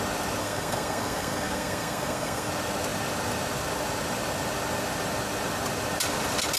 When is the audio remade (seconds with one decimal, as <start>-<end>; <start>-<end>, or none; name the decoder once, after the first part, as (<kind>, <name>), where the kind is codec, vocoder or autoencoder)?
0.4-2.5 (codec, SNAC)